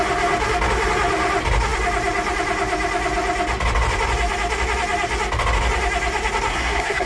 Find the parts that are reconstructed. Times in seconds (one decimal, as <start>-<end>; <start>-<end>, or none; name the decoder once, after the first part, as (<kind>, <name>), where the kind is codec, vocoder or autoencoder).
6.5-7.1 (codec, SNAC)